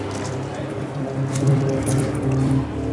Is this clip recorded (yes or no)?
no